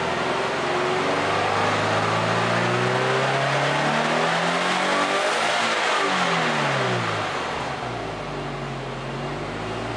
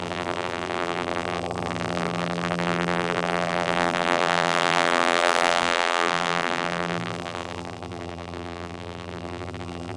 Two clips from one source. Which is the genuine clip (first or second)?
first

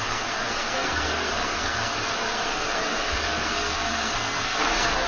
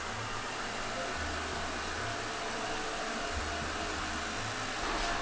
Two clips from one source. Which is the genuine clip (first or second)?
second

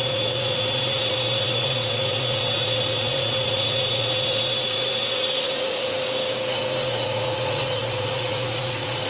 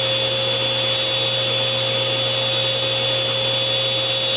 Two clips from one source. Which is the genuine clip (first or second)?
second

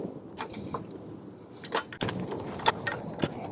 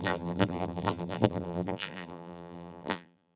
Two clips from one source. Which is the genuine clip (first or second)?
first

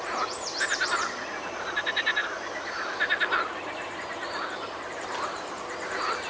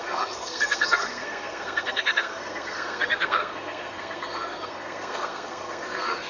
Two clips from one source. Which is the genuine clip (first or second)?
first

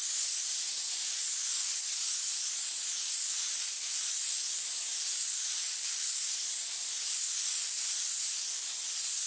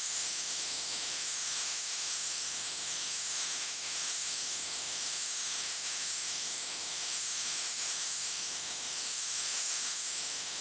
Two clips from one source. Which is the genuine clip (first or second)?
first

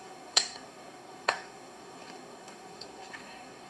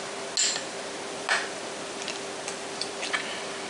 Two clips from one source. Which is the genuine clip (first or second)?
second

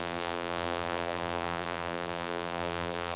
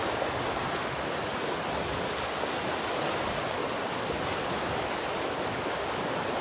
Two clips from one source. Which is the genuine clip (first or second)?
second